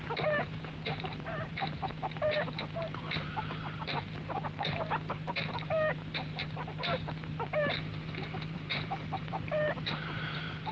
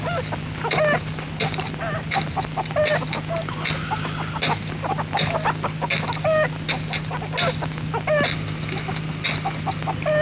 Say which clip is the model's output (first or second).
first